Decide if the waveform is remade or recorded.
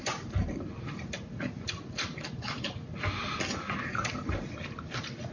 recorded